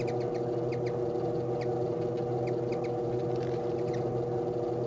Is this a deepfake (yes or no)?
no